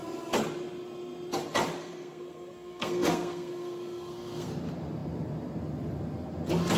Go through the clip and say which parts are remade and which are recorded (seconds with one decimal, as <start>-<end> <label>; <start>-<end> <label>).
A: 0.0-1.8 recorded; 1.8-4.5 remade; 4.5-6.8 recorded